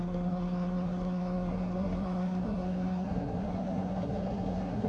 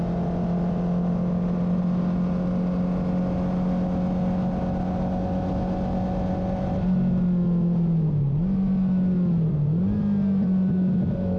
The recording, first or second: second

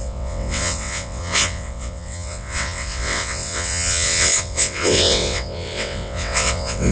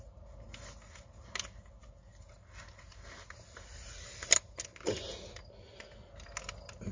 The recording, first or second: second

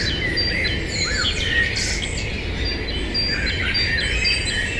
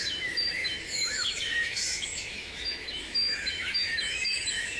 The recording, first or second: first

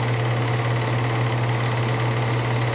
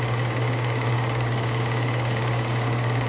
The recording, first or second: first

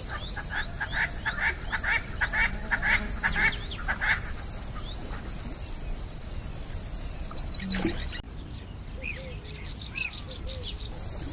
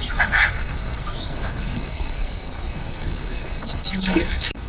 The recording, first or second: first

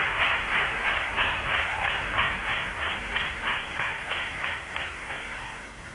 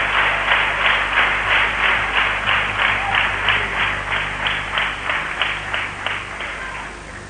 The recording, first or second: second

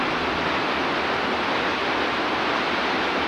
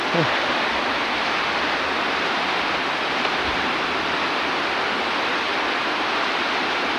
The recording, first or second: first